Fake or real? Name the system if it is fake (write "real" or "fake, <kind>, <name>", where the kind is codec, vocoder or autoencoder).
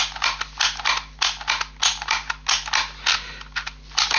real